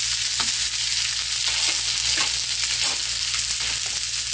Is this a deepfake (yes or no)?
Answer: no